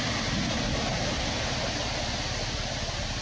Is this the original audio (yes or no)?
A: yes